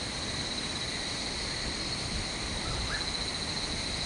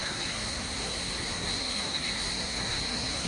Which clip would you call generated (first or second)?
second